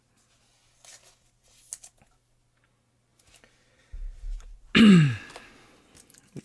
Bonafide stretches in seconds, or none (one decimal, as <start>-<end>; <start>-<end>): 0.0-6.4